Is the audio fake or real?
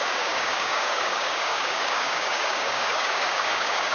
fake